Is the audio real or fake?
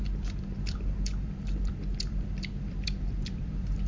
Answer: fake